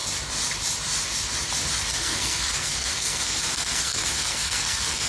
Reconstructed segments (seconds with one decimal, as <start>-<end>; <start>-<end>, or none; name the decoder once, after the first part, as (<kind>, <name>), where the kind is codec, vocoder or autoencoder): 1.9-5.1 (codec, SNAC)

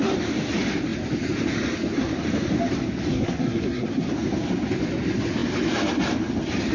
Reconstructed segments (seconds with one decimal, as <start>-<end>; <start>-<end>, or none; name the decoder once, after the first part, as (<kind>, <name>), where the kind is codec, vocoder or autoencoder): 3.1-4.1 (codec, SNAC)